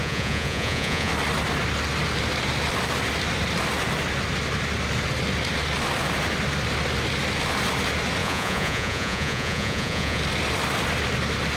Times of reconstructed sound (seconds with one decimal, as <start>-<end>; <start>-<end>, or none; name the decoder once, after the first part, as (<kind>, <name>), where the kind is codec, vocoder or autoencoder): 0.0-1.1 (vocoder, Vocos); 8.2-10.2